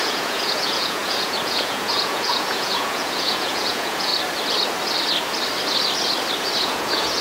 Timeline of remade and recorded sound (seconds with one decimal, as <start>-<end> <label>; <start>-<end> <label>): 0.0-4.1 remade; 4.1-6.6 recorded; 6.6-7.2 remade